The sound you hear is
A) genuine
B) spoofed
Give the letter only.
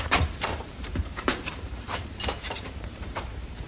B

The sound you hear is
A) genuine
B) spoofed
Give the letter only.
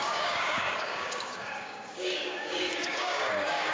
B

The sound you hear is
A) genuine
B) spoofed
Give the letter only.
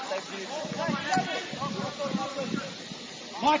A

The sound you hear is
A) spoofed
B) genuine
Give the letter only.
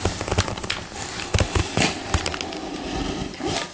B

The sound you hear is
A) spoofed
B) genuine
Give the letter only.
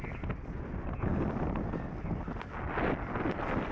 B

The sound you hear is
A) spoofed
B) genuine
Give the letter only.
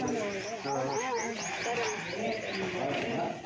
B